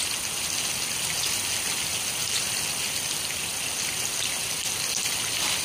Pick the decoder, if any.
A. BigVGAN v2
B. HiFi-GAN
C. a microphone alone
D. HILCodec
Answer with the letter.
C